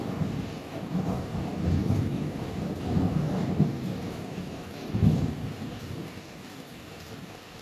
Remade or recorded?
remade